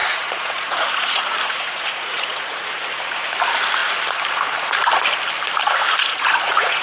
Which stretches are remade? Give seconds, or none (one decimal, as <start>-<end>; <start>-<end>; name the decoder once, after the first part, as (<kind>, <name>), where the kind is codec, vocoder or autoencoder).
0.0-2.7 (vocoder, Vocos); 6.1-6.8